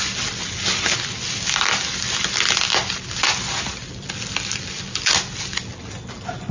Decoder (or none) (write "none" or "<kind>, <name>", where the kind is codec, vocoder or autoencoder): none